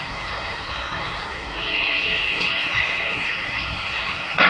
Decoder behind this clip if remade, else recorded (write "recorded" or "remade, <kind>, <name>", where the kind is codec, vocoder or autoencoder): remade, codec, SNAC